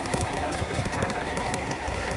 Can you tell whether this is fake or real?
fake